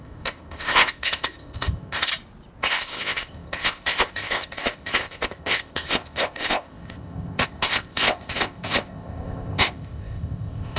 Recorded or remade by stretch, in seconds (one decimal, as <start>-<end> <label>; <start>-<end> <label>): 0.0-2.1 remade; 2.1-2.6 recorded; 2.6-10.8 remade